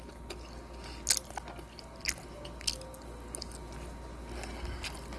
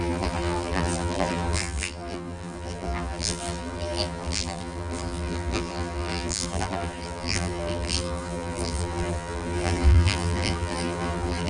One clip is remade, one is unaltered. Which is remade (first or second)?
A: second